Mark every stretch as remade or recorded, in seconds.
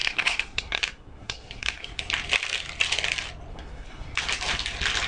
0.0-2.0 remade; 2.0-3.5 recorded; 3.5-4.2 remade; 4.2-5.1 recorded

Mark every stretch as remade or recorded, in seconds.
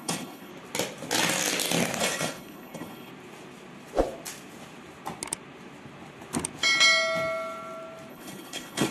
0.0-0.5 remade; 0.5-2.0 recorded; 2.0-3.1 remade; 3.1-8.1 recorded; 8.1-8.9 remade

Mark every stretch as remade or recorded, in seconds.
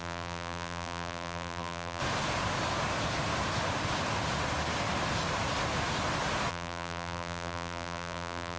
0.0-2.0 remade; 2.0-6.5 recorded; 6.5-8.6 remade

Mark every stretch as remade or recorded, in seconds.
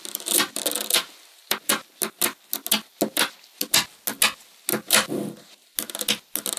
0.0-6.6 recorded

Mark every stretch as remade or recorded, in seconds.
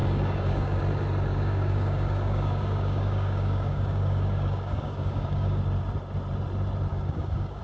0.0-0.8 remade; 0.8-1.3 recorded; 1.3-5.6 remade; 5.6-6.9 recorded; 6.9-7.6 remade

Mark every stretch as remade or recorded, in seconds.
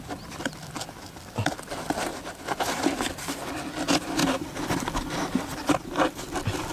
0.0-6.7 recorded